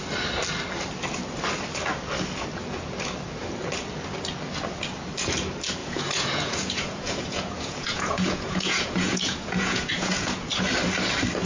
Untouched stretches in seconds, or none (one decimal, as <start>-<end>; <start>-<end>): 0.0-5.8; 10.6-11.5